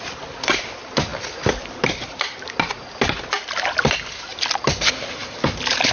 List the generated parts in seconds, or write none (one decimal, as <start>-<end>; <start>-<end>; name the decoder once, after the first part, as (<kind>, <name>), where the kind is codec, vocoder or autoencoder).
none